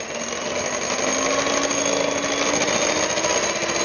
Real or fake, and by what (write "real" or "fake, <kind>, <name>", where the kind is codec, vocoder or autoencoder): real